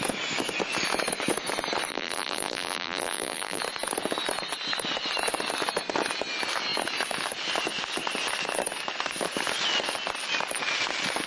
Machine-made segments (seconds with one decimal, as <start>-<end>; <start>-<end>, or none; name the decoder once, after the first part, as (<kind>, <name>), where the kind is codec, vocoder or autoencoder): 1.9-3.6 (vocoder, BigVGAN v2)